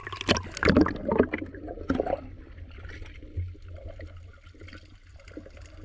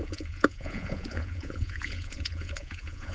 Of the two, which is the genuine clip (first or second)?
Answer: first